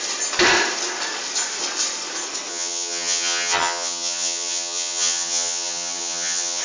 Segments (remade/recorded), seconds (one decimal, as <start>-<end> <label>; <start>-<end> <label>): 0.0-2.5 recorded; 2.5-6.6 remade